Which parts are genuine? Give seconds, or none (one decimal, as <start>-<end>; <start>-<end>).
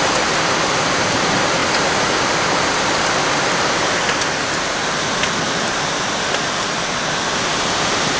0.0-8.2